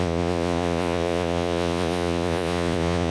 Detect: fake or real fake